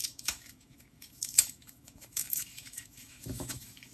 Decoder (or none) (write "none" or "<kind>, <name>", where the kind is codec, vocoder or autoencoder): autoencoder, DAC-VAE